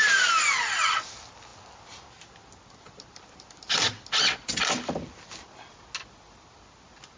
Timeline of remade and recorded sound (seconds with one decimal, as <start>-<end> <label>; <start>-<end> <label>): 0.0-7.2 recorded